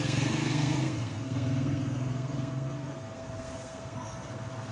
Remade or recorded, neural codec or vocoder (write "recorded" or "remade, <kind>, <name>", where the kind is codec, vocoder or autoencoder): remade, codec, SNAC